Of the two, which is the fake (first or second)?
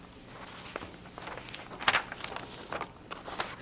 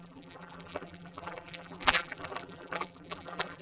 second